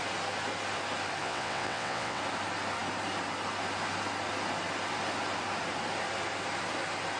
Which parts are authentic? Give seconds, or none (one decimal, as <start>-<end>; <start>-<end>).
0.0-1.2; 2.2-7.2